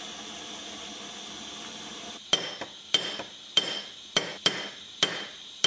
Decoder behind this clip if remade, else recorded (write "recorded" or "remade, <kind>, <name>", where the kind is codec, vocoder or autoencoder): recorded